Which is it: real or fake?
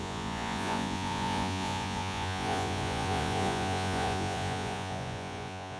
fake